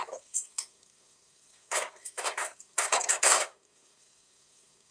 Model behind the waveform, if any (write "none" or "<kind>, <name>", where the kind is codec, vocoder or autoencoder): codec, SNAC